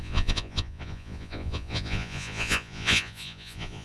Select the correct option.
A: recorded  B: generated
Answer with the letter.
B